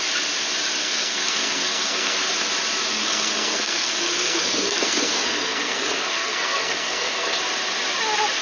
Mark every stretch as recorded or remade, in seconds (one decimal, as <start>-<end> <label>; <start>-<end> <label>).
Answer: 0.0-0.8 recorded; 0.8-2.3 remade; 2.3-2.8 recorded; 2.8-7.4 remade; 7.4-8.4 recorded